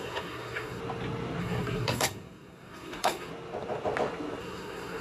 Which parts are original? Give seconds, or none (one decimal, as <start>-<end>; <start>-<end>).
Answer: 0.8-1.4; 3.3-4.4